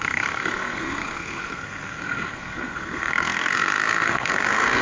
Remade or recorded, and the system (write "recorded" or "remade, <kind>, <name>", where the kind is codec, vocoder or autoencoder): remade, codec, SNAC